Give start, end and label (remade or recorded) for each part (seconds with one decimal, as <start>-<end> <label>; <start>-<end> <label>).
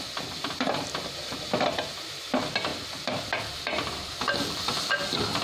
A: 0.0-5.4 recorded